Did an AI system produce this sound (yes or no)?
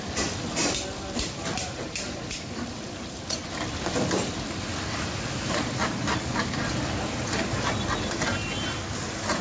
yes